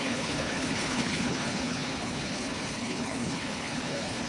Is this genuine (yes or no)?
no